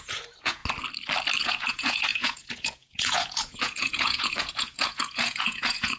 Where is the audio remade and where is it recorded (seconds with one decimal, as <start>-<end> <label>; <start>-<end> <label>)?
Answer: 0.0-0.6 remade; 0.6-1.4 recorded; 1.4-6.0 remade